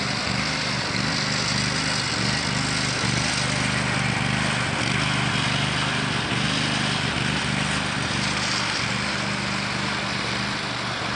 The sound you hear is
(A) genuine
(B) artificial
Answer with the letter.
A